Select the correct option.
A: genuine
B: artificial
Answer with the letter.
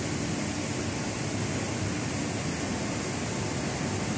A